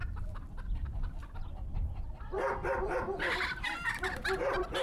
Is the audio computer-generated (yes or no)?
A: yes